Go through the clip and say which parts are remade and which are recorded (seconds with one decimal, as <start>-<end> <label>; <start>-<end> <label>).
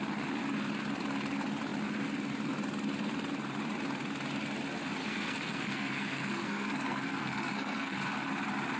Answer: 0.0-5.0 recorded; 5.0-8.0 remade; 8.0-8.8 recorded